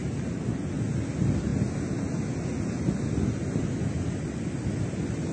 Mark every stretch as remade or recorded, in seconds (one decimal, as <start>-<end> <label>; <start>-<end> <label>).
0.0-5.3 recorded